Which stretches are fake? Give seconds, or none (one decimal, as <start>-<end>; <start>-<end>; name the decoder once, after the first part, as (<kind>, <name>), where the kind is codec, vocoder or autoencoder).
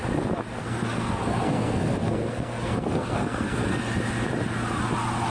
0.6-3.8 (codec, SNAC)